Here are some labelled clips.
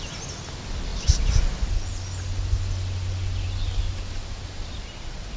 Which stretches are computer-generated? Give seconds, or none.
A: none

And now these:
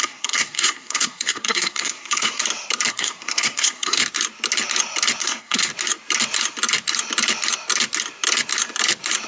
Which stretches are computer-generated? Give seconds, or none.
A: 0.0-2.4; 2.9-4.0; 5.2-5.7

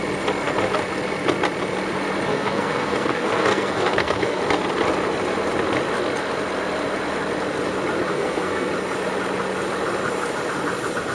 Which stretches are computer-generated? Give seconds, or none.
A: 2.3-4.4; 8.1-8.7

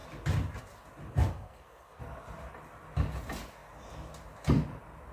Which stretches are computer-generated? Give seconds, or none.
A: 1.3-2.0

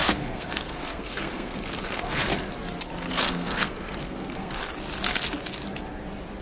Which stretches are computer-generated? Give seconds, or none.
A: 0.0-2.3; 3.1-4.6

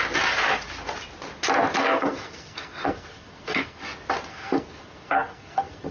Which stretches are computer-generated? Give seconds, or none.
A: 1.8-3.8; 4.3-5.9